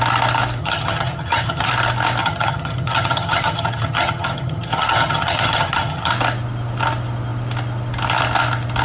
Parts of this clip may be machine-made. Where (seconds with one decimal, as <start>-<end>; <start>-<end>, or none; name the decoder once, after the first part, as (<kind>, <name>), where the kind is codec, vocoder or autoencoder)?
0.6-1.7 (vocoder, HiFi-GAN); 2.2-6.1